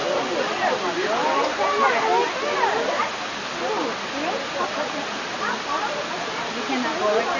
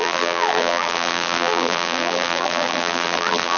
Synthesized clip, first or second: second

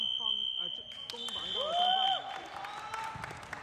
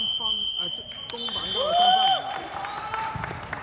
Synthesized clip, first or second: second